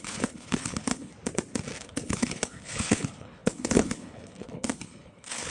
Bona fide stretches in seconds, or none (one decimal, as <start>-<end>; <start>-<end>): 1.1-1.8